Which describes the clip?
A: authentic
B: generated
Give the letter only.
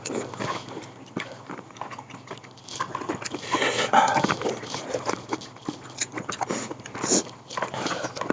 A